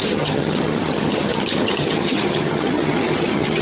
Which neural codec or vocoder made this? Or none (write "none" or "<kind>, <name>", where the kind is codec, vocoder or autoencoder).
vocoder, HiFi-GAN